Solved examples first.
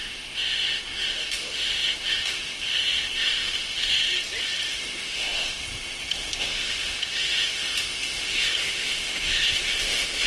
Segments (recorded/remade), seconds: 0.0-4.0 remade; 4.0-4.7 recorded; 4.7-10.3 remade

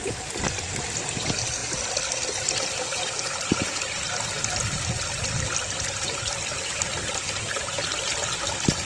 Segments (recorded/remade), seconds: 0.0-8.8 recorded

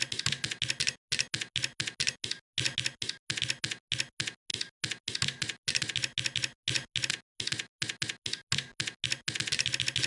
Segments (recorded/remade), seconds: 0.0-10.1 recorded

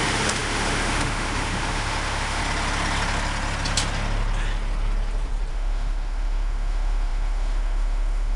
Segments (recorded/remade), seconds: 0.0-2.4 remade; 2.4-5.5 recorded; 5.5-8.4 remade

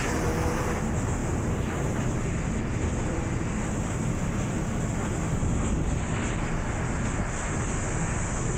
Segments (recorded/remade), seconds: 0.0-8.6 recorded

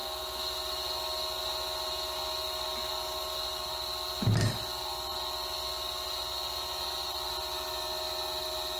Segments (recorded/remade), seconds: 0.0-8.8 recorded